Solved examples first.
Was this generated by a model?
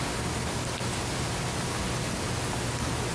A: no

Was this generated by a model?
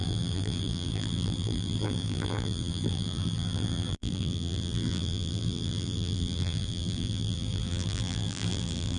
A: yes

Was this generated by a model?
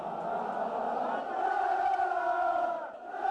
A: no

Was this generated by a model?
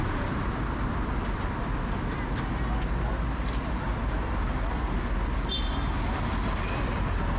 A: no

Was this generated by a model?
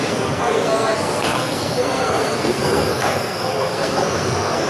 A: yes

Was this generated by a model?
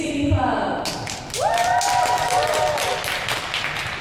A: no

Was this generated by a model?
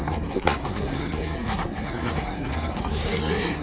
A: yes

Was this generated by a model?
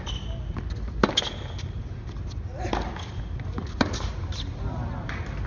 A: no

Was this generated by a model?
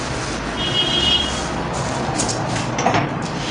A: no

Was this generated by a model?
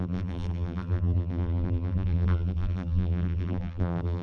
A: yes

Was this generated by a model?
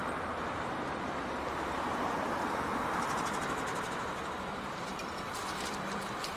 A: yes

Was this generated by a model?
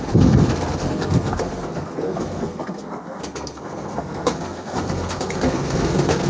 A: yes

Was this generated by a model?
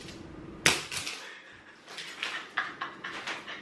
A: no